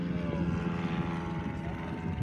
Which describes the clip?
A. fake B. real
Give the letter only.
B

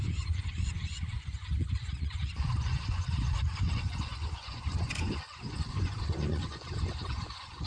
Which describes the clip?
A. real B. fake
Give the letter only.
B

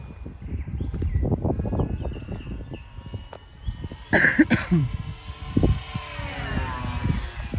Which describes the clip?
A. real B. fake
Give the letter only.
A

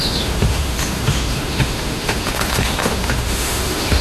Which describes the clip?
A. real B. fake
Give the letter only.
B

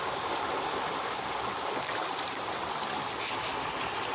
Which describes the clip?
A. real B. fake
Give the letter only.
A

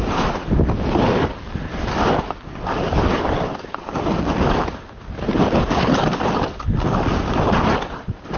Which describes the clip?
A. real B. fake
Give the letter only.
A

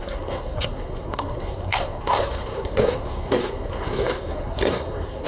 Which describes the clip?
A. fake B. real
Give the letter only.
A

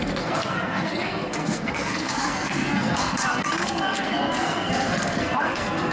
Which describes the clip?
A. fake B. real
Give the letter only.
A